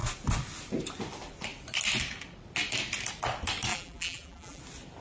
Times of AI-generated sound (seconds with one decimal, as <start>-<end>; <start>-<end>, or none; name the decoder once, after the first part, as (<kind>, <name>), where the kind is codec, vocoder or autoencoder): 3.7-4.6 (vocoder, BigVGAN v2)